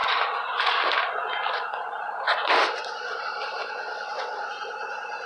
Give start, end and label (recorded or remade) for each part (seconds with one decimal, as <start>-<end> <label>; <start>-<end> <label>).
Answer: 0.0-3.6 recorded; 3.6-4.5 remade; 4.5-5.3 recorded